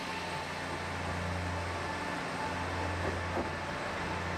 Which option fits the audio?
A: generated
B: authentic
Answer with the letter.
B